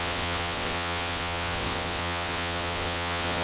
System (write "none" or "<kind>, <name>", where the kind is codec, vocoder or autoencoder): vocoder, WaveNeXt